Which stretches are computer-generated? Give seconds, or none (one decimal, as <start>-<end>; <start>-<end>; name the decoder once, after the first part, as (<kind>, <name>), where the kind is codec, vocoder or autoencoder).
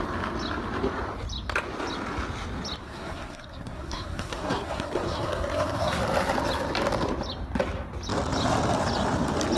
2.8-6.0 (codec, SNAC)